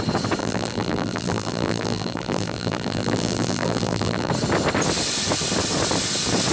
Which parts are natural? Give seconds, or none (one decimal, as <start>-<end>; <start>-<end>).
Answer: 0.0-0.4; 4.3-6.5